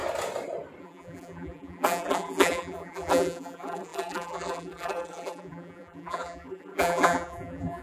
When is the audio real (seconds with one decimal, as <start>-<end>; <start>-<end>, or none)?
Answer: 0.0-0.8